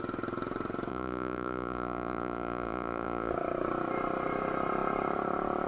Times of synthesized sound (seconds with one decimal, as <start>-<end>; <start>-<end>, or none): 0.9-3.3